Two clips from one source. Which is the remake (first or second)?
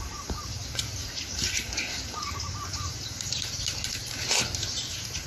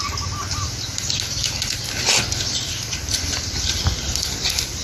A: first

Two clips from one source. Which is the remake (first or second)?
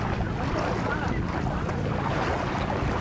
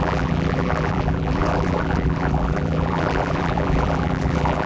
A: second